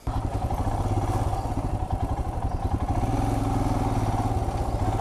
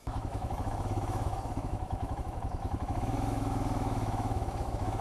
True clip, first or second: first